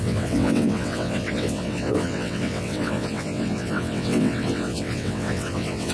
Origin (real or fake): fake